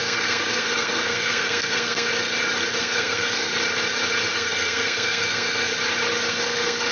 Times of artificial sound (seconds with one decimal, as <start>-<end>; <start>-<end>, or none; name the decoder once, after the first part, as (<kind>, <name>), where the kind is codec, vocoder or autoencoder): 0.0-2.1 (codec, SNAC); 2.8-3.5; 4.3-5.7; 6.3-6.9